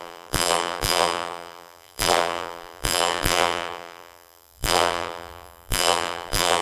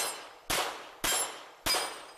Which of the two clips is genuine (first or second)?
second